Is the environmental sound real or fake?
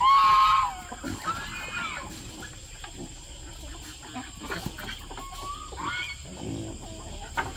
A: real